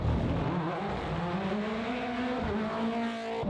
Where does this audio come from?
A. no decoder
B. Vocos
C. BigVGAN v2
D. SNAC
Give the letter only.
A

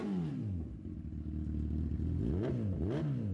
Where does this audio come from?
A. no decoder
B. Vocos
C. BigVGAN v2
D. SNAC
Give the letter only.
A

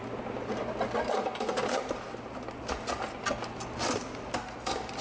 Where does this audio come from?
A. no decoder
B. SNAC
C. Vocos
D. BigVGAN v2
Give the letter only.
A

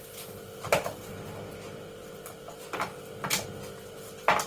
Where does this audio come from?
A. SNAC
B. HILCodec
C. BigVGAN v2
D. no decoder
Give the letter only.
D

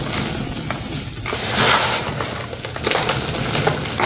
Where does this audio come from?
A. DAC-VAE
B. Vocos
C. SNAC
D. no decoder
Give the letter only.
D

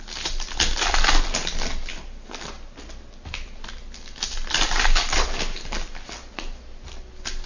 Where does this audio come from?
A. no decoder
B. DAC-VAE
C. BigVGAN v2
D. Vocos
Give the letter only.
A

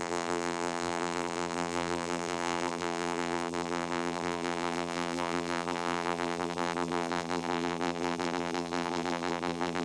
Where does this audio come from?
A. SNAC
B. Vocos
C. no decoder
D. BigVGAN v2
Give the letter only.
D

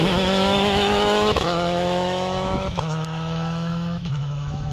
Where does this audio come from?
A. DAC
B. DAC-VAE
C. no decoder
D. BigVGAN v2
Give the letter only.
B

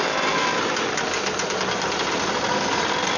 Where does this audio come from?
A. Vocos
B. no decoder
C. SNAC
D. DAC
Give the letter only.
B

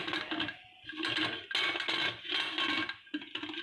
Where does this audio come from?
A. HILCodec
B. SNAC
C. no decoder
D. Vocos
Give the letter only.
C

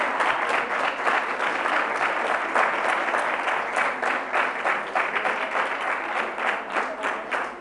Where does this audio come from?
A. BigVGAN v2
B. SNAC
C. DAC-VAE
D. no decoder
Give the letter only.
D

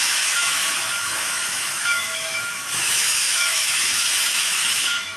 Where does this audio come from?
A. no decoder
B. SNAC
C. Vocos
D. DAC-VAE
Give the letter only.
D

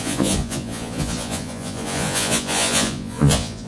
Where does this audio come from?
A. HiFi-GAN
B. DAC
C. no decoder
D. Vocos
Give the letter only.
D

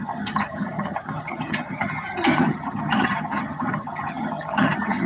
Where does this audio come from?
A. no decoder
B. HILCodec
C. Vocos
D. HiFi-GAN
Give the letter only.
D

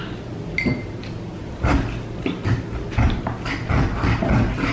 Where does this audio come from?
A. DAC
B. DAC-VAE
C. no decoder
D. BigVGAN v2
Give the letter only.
C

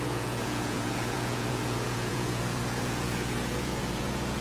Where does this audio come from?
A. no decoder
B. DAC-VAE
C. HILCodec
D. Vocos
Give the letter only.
D